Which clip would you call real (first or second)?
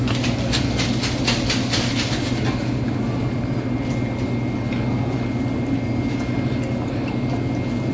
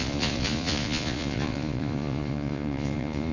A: first